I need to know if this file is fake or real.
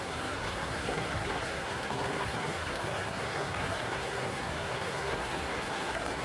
fake